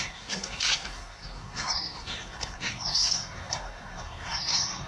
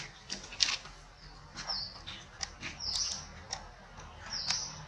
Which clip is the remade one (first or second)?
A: first